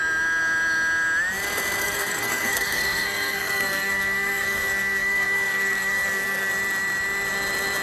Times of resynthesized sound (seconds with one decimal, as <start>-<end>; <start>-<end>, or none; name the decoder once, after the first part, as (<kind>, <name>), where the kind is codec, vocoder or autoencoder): 1.8-6.5 (codec, SNAC)